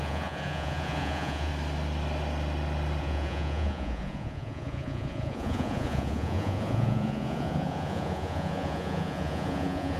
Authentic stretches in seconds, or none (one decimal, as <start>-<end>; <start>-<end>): 1.5-3.0